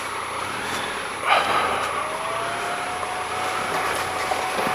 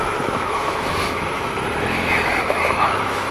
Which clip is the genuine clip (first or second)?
first